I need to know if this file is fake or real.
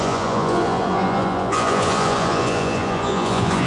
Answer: fake